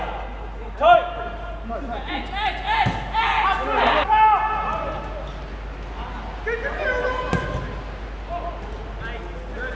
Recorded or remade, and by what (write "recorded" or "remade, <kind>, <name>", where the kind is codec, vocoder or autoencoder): recorded